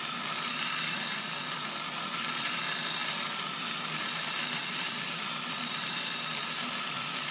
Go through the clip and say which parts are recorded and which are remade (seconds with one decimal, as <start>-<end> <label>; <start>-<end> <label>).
0.0-7.3 remade